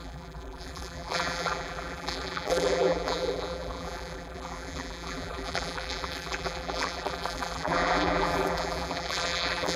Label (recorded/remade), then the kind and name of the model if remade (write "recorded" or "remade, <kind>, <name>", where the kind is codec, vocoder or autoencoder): remade, vocoder, BigVGAN v2